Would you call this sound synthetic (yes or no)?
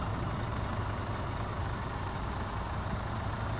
yes